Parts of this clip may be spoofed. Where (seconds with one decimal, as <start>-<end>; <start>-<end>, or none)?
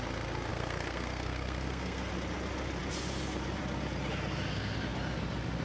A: 0.5-2.1